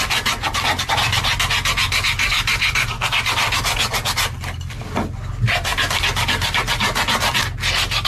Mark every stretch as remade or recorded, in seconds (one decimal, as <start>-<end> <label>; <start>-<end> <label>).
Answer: 0.0-8.1 recorded